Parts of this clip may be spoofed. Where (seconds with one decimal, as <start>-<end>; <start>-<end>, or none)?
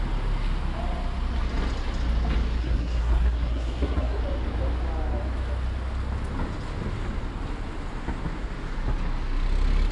2.6-4.2